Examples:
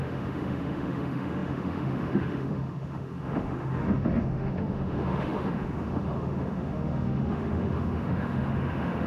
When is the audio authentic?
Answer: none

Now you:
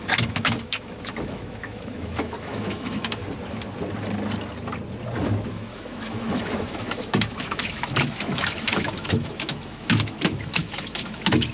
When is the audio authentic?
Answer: 3.2-5.5

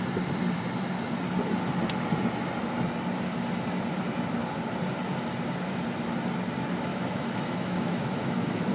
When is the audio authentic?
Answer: 0.0-6.9

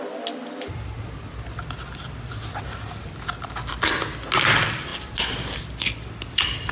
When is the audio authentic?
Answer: 0.0-6.7